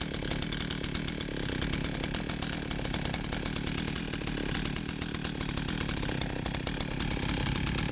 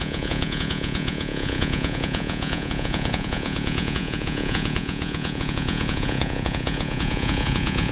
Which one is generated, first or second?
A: second